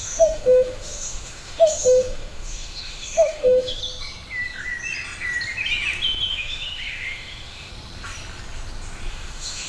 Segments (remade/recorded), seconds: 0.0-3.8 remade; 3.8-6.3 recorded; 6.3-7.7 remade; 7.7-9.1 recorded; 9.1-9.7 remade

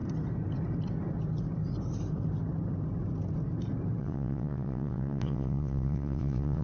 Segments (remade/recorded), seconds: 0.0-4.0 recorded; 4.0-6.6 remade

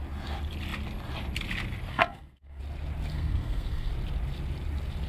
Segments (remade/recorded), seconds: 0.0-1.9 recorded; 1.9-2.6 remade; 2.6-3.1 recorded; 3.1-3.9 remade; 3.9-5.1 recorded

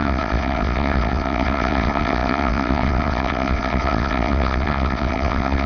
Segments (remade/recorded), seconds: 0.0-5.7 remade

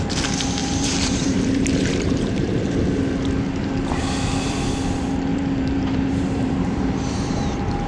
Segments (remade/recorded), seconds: 0.0-0.6 recorded; 0.6-2.5 remade; 2.5-5.3 recorded; 5.3-7.9 remade

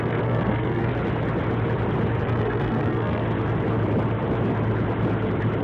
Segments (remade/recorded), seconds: 0.0-0.9 remade; 0.9-2.2 recorded; 2.2-3.2 remade; 3.2-5.6 recorded